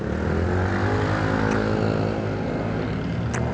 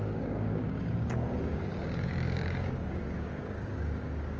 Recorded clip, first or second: first